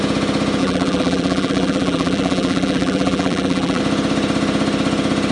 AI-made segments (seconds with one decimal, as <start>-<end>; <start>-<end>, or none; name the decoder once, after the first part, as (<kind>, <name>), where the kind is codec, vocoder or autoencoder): 0.6-3.8 (vocoder, BigVGAN v2)